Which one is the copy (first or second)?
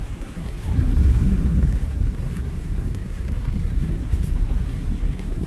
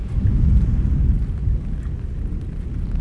first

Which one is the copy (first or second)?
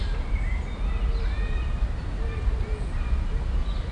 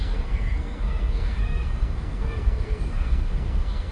second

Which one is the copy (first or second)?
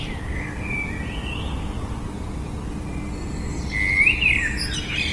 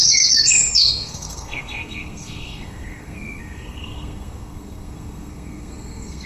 second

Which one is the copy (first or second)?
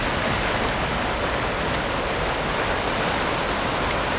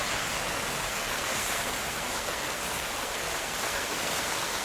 second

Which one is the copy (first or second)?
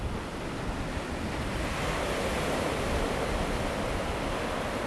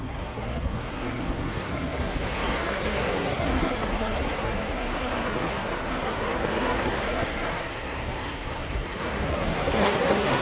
second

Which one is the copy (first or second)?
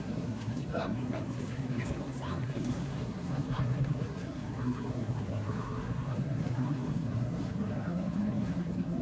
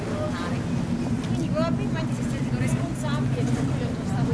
first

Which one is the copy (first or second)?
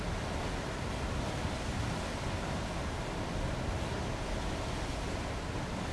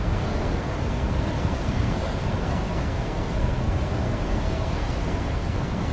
second